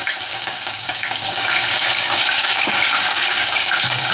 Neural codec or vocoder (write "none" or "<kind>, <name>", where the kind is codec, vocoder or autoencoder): codec, DAC